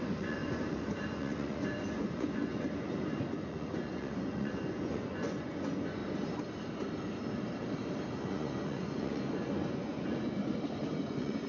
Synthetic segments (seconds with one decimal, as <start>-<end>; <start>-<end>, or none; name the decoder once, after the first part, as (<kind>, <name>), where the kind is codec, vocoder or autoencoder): 0.0-6.0 (vocoder, Vocos); 8.1-10.4; 11.0-11.5